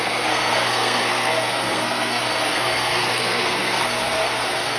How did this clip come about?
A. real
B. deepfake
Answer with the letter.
B